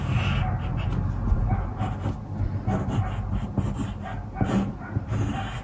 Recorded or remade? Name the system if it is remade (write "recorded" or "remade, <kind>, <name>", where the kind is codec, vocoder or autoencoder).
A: recorded